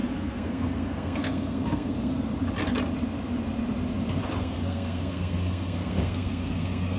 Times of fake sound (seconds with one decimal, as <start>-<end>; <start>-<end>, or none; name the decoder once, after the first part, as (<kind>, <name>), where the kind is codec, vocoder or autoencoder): 0.0-2.1 (codec, SNAC); 4.4-7.0